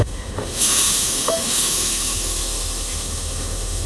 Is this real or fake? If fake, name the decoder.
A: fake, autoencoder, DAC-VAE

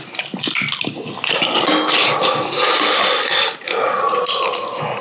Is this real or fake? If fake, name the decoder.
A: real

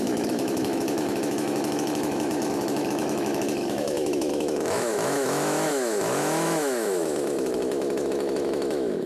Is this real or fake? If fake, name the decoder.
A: fake, autoencoder, DAC-VAE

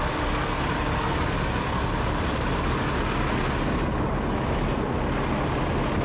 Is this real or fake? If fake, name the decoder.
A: real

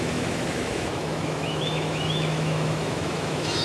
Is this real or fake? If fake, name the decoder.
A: fake, autoencoder, DAC-VAE